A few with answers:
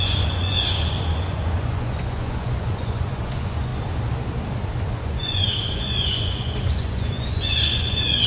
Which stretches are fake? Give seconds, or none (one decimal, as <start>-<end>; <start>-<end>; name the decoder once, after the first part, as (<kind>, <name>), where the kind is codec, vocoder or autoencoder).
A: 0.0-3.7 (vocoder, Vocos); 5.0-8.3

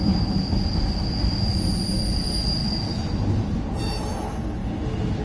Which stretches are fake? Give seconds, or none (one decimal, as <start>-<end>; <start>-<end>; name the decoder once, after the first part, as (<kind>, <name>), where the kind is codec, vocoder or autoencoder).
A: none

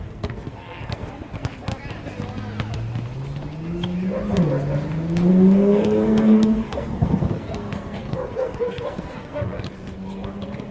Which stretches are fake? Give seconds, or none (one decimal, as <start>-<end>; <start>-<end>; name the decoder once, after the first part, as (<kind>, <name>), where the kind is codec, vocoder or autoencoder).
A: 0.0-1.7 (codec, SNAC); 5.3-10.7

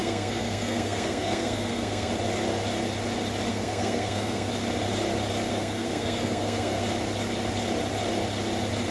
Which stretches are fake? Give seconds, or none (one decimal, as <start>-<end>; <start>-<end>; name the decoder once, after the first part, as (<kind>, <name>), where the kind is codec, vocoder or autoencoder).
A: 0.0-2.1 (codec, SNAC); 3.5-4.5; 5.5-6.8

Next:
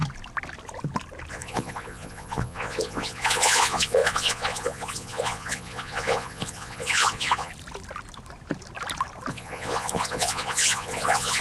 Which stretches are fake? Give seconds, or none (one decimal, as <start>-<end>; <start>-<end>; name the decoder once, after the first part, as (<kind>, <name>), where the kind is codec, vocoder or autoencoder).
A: 1.3-7.5 (vocoder, Vocos); 9.3-11.4

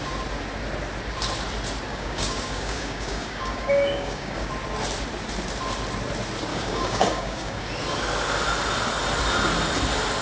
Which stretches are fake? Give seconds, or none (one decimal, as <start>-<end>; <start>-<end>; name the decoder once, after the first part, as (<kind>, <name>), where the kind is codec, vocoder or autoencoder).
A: 1.9-4.5 (codec, DAC); 6.5-7.6

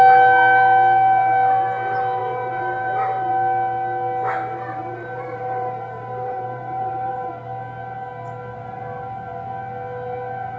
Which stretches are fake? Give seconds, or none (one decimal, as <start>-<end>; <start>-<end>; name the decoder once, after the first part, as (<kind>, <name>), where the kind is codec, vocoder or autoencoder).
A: 2.2-3.3 (vocoder, BigVGAN v2); 4.8-7.3

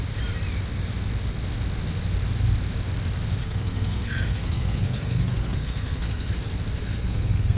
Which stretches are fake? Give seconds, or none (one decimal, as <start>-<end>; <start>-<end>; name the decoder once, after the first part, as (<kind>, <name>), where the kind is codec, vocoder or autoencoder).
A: 3.4-6.3 (codec, SNAC); 6.8-7.6